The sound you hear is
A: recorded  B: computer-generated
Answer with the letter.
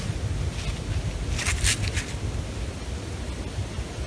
A